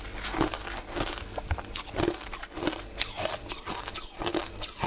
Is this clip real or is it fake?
real